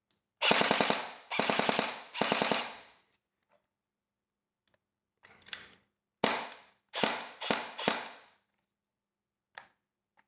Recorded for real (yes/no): yes